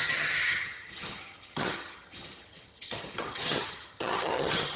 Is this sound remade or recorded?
remade